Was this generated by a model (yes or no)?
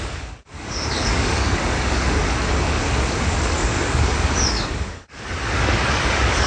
yes